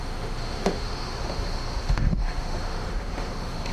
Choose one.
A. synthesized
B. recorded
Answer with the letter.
A